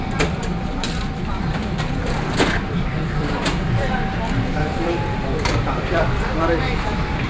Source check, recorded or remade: remade